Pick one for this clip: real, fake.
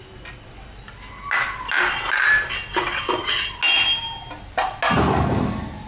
real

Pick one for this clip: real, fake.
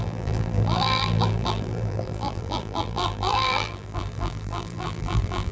fake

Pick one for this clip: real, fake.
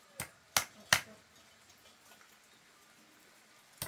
real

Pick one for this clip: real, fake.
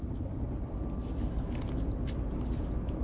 real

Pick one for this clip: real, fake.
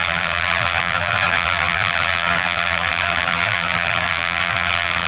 fake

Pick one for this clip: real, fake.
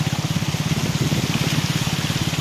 real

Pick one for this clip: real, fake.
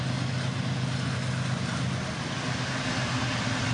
real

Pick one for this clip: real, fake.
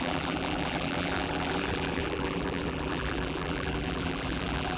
fake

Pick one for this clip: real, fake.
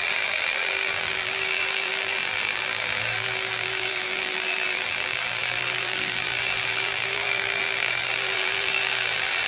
fake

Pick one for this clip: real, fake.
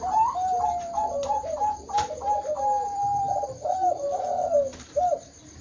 fake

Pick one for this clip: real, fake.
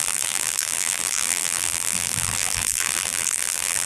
fake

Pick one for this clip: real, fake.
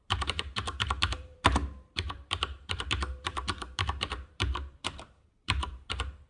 fake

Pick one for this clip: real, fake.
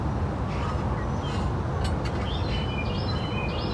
real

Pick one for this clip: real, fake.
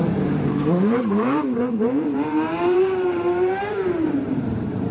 fake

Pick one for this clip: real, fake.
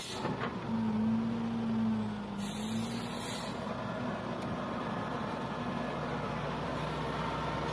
real